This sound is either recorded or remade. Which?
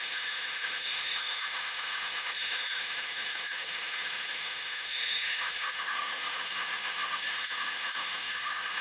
remade